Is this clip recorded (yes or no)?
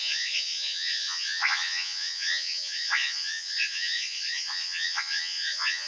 no